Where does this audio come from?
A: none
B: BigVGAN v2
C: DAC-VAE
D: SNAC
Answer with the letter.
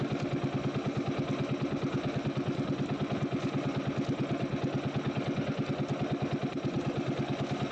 A